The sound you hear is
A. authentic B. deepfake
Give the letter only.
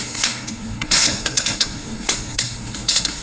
B